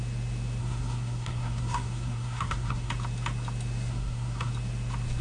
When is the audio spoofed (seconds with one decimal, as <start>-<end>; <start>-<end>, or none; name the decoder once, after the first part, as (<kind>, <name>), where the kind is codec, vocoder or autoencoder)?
0.6-2.9 (codec, SNAC); 3.9-4.5